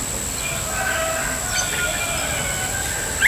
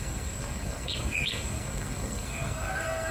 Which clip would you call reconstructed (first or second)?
second